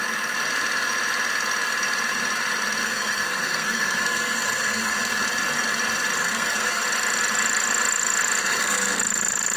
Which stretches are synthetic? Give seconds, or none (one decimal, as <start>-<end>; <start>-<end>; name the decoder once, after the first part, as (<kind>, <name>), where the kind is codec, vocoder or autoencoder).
2.8-5.1 (codec, SNAC); 6.2-6.8; 8.4-9.0